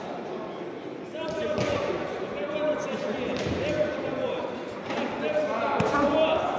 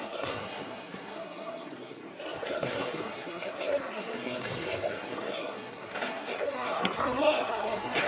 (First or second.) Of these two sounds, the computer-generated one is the second